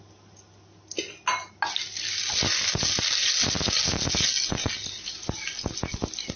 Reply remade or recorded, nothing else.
recorded